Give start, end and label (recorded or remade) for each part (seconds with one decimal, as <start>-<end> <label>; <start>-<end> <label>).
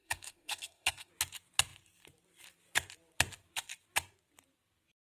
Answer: 0.0-1.1 remade; 1.1-5.0 recorded